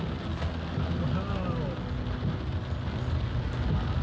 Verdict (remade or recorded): recorded